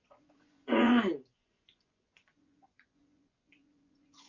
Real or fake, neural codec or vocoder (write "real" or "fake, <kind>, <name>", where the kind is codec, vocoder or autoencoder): fake, vocoder, Vocos